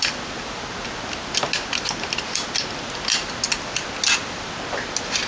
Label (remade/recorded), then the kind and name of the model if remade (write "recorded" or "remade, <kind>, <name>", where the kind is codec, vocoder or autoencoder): recorded